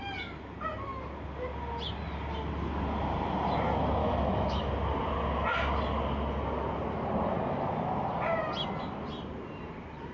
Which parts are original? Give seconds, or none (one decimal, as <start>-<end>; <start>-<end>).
0.0-4.0; 4.7-10.1